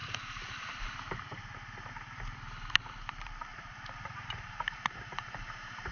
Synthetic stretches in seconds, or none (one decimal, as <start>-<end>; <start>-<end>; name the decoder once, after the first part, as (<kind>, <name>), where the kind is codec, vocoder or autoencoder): 0.0-0.7 (vocoder, BigVGAN v2); 3.5-5.9